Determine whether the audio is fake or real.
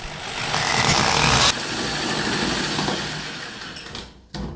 real